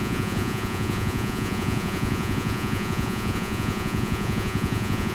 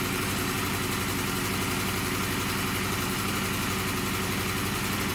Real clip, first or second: second